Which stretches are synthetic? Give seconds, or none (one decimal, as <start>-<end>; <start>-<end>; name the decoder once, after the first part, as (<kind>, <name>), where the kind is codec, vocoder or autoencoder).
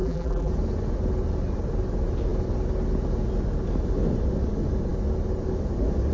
0.0-0.5 (vocoder, BigVGAN v2)